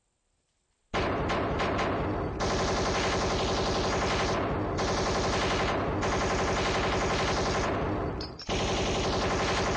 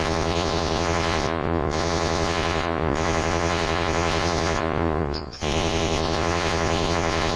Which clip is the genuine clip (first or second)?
first